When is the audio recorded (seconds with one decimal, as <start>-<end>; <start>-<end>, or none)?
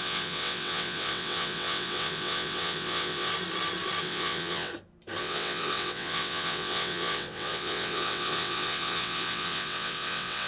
3.3-4.0; 4.7-5.2